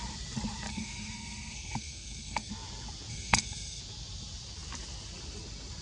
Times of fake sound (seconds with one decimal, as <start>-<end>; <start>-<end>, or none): 0.7-2.5; 3.1-3.8